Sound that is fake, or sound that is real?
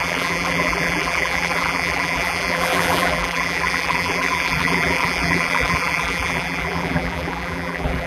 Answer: fake